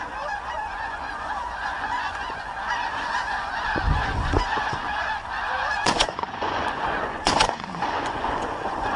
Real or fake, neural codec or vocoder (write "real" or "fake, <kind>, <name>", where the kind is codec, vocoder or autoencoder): fake, vocoder, Vocos